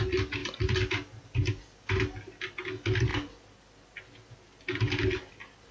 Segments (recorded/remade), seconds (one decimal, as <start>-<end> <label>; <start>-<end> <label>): 0.0-5.7 recorded